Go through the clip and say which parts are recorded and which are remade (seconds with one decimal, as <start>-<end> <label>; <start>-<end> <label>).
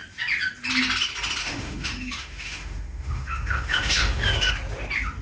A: 0.0-1.4 recorded; 1.4-4.5 remade; 4.5-5.2 recorded